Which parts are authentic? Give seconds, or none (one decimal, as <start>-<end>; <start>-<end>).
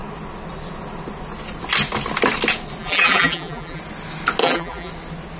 0.0-2.8; 3.8-4.4; 4.9-5.4